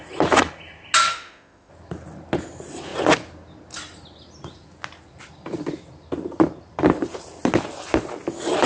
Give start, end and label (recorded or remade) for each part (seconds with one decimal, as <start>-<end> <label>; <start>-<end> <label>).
0.0-1.1 recorded; 1.1-1.7 remade; 1.7-8.7 recorded